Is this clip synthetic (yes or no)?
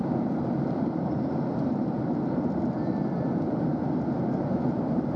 yes